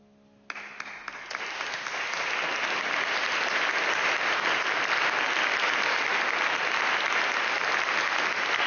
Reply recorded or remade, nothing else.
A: recorded